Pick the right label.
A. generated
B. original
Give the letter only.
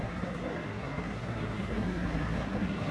A